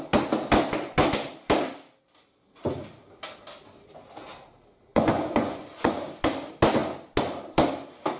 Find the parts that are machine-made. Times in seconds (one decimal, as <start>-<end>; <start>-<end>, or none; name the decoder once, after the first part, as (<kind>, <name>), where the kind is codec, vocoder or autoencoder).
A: 4.9-5.9 (vocoder, Vocos)